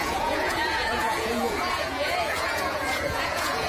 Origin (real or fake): fake